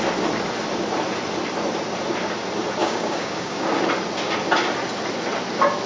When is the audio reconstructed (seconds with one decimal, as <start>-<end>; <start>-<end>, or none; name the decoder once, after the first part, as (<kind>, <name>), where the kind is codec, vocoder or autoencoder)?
2.8-3.7 (codec, DAC)